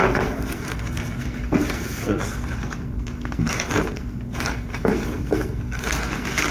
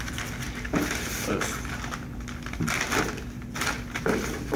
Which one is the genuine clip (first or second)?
second